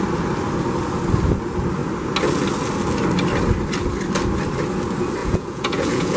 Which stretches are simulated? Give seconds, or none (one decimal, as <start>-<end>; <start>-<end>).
5.2-6.2